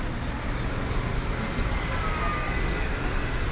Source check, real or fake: real